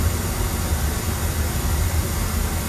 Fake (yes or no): no